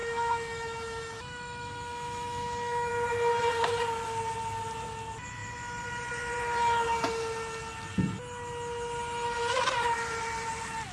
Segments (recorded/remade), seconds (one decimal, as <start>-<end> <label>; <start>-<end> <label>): 0.0-2.9 remade; 2.9-10.9 recorded